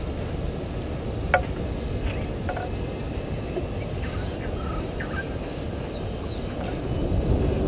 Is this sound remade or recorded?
recorded